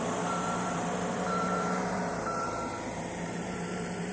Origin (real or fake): fake